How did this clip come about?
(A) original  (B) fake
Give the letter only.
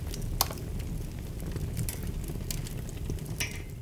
A